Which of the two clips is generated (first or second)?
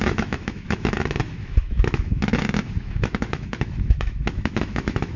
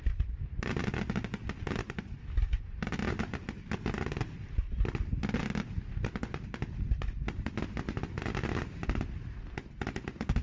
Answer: first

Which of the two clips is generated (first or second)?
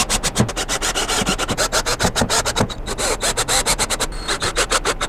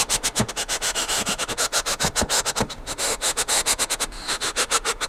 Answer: second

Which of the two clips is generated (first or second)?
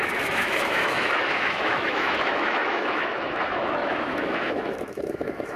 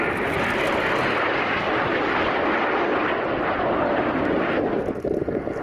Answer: first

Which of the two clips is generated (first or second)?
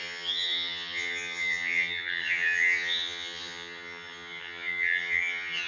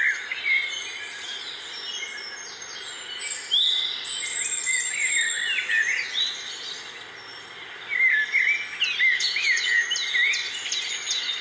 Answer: first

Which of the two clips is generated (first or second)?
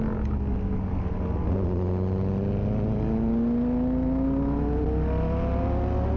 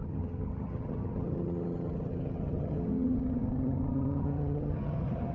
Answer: second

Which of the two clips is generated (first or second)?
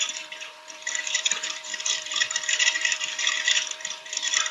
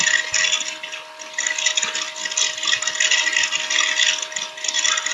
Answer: first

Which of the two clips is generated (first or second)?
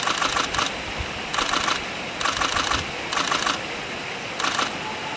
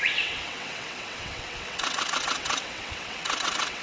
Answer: second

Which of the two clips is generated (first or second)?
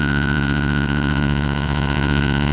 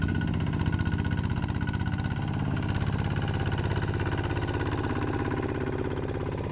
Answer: first